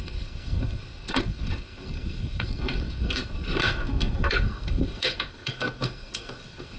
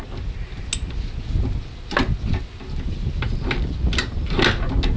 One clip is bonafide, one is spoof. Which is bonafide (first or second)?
second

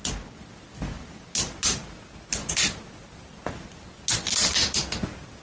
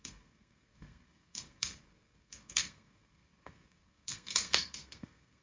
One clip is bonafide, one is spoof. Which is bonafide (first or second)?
first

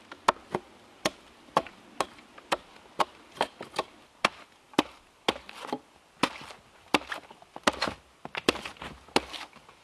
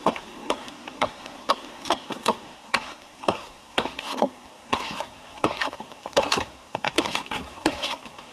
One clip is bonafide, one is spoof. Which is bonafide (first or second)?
first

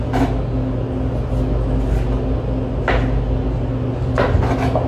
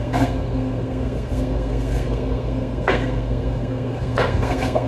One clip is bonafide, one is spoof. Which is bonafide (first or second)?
first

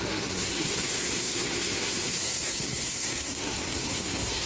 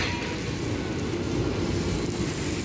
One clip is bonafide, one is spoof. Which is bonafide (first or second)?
second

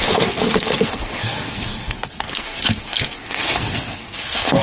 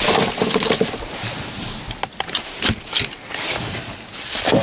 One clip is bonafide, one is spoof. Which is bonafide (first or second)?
second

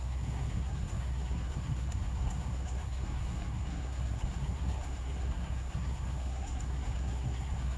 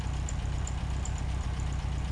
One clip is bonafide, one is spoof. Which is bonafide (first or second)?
second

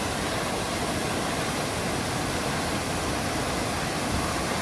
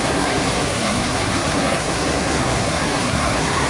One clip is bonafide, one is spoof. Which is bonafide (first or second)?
first